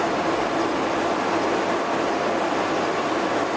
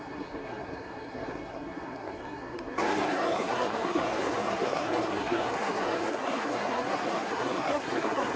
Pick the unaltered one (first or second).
first